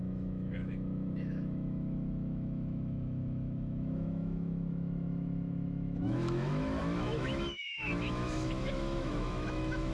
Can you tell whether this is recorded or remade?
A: remade